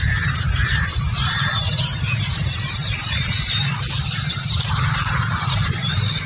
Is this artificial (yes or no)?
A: yes